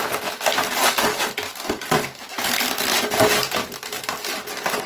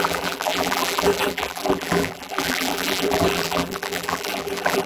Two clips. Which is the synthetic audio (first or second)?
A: second